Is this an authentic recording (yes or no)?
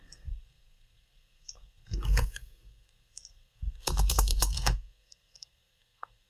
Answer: no